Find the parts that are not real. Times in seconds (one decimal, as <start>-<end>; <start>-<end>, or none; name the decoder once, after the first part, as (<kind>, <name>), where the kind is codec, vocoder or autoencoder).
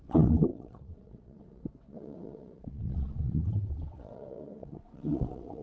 0.0-5.6 (vocoder, WaveNeXt)